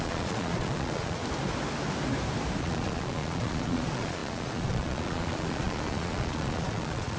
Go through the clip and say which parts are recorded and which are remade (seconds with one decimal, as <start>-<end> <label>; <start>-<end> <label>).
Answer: 0.0-1.2 remade; 1.2-2.6 recorded; 2.6-7.2 remade